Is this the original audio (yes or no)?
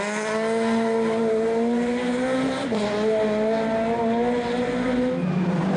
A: yes